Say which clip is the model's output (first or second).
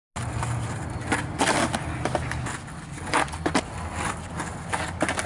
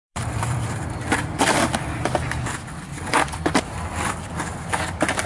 second